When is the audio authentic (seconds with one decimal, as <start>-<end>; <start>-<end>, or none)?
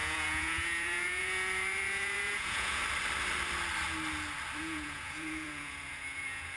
2.8-4.6